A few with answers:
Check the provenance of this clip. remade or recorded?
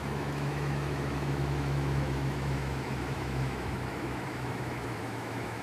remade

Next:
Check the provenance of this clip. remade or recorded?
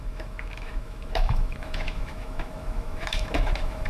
remade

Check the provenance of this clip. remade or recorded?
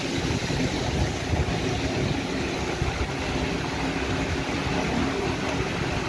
recorded